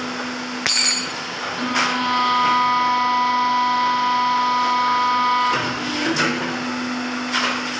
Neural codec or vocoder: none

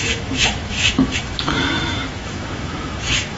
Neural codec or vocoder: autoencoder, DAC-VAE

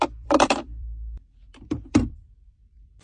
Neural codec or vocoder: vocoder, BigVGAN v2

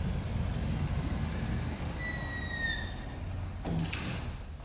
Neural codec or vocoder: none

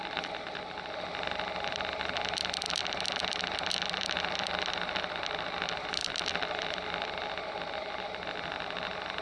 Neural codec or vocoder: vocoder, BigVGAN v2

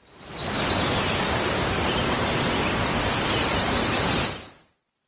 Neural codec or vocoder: none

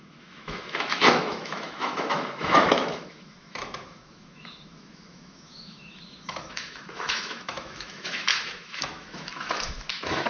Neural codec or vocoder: autoencoder, DAC-VAE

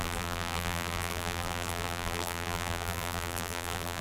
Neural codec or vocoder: vocoder, BigVGAN v2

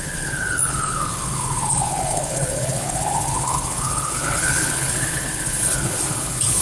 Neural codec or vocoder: codec, HILCodec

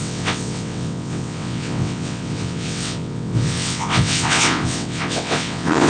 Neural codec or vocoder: vocoder, WaveNeXt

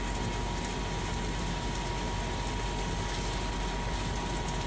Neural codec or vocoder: none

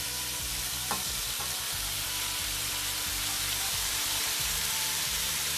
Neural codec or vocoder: vocoder, BigVGAN v2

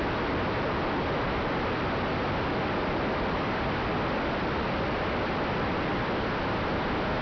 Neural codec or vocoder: none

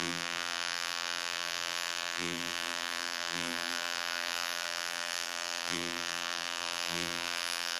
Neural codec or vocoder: vocoder, BigVGAN v2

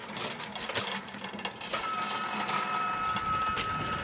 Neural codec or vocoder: none